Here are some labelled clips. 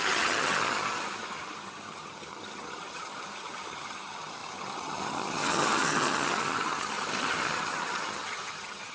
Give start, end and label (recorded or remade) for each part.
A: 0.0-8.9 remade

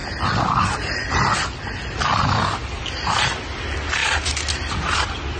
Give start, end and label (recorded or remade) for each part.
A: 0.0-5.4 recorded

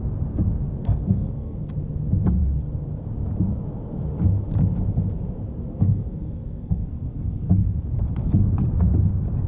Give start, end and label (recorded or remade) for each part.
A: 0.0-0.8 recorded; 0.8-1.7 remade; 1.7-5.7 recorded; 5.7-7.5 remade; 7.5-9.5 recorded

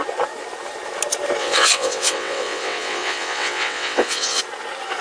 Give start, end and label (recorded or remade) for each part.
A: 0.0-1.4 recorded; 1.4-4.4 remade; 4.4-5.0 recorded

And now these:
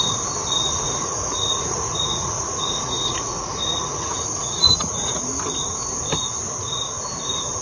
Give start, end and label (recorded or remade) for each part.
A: 0.0-0.6 recorded; 0.6-5.2 remade; 5.2-7.6 recorded

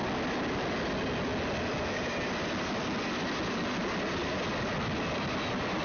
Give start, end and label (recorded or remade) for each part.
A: 0.0-5.8 recorded

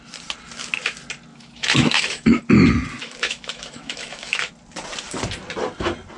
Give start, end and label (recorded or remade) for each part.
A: 0.0-1.3 recorded; 1.3-2.4 remade; 2.4-3.0 recorded; 3.0-4.5 remade; 4.5-6.2 recorded